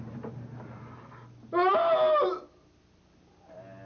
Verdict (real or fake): real